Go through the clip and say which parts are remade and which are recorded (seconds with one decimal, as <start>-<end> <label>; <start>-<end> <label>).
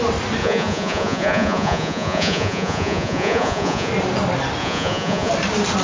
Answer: 0.0-0.4 recorded; 0.4-3.9 remade; 3.9-4.6 recorded; 4.6-5.3 remade; 5.3-5.8 recorded